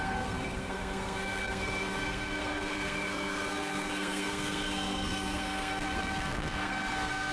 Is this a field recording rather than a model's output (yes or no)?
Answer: no